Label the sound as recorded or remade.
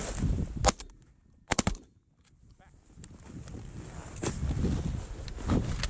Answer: recorded